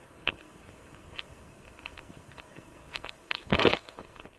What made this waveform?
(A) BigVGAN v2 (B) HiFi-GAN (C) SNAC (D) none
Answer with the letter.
C